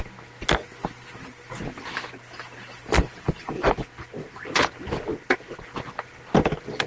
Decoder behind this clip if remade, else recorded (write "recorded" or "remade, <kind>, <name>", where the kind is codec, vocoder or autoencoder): recorded